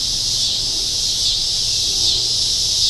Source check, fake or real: real